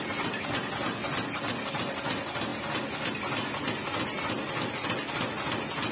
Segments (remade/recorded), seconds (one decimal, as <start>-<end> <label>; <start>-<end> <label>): 0.0-5.9 recorded